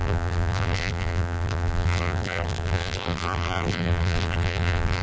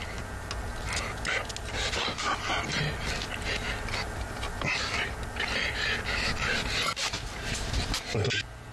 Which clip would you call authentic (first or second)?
second